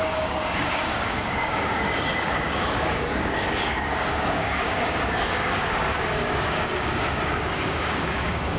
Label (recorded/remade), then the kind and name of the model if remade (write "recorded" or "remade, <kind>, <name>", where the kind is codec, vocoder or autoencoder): remade, codec, DAC